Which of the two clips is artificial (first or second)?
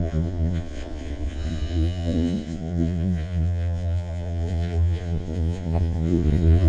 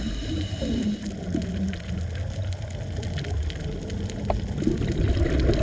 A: first